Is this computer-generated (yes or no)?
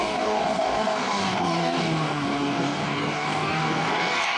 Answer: yes